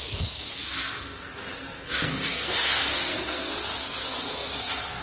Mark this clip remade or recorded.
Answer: remade